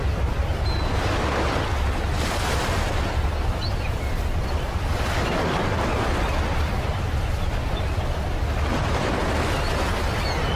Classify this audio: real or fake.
real